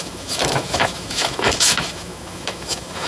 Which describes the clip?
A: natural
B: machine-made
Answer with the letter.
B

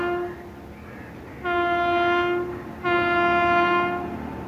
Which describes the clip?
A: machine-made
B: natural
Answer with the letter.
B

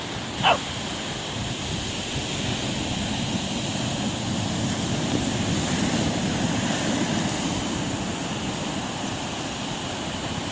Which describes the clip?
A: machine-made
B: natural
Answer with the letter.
B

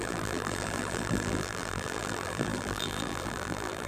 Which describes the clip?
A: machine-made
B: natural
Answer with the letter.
A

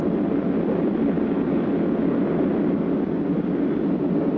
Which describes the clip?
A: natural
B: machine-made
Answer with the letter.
A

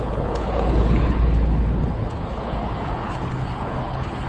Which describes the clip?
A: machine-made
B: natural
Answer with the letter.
A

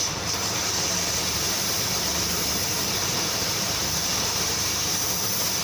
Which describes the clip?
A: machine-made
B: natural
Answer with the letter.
A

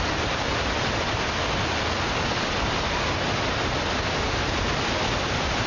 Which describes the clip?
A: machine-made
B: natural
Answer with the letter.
B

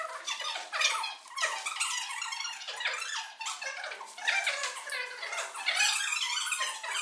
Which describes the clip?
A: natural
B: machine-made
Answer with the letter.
A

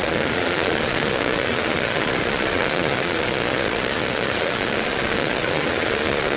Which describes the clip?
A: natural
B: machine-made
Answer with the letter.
B